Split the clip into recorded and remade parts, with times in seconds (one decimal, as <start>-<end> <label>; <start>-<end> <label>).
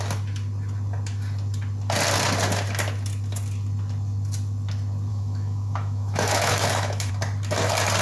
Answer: 0.0-5.1 recorded; 5.1-7.1 remade; 7.1-8.0 recorded